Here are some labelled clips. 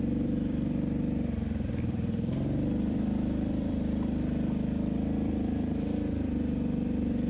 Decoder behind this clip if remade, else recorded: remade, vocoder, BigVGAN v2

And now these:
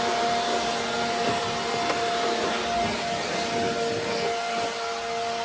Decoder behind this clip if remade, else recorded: recorded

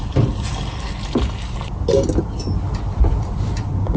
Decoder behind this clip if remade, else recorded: recorded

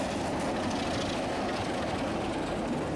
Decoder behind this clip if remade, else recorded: recorded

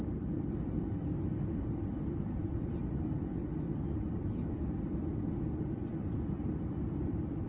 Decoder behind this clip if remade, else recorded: remade, vocoder, BigVGAN v2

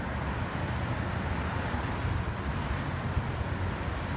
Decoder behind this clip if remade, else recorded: recorded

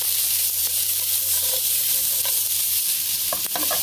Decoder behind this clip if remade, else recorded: remade, vocoder, BigVGAN v2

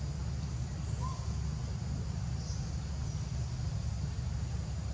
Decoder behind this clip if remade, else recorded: recorded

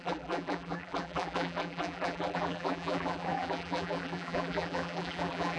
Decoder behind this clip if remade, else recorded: remade, vocoder, BigVGAN v2